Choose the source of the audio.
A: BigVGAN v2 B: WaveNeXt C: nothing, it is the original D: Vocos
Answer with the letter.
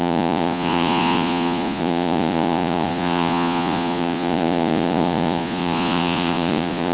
D